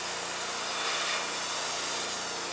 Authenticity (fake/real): real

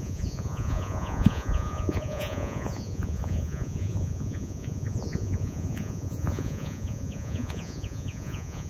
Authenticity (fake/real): fake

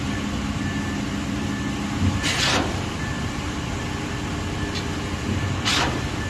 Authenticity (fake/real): real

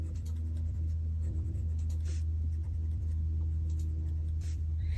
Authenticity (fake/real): fake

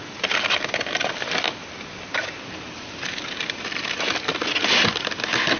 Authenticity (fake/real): real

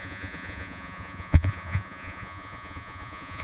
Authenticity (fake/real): fake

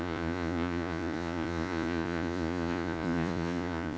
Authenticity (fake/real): fake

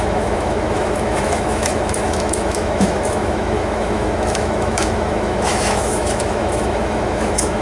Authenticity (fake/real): fake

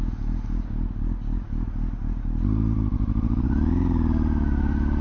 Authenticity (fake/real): real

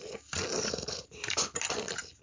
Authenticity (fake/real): real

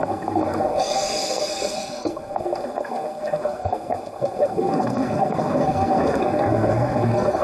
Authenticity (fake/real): fake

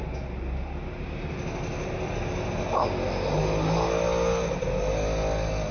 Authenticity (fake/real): real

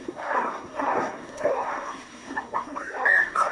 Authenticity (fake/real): fake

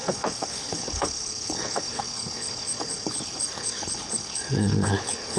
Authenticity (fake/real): fake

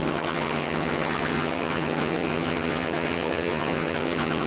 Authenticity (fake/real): fake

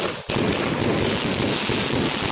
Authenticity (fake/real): real